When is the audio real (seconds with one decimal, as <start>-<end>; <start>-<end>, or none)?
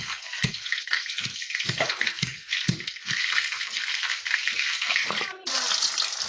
5.0-6.3